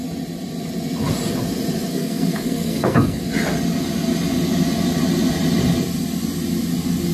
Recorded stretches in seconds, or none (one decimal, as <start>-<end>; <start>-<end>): 0.0-1.9; 3.2-7.1